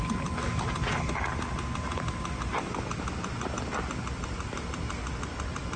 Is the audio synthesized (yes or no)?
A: no